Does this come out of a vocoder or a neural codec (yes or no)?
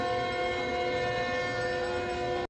no